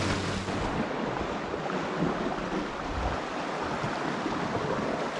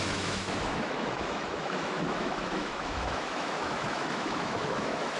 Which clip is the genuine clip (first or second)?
first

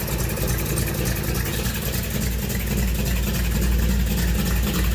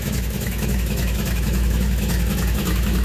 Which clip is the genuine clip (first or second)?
first